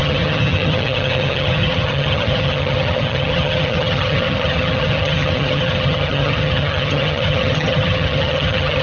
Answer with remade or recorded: remade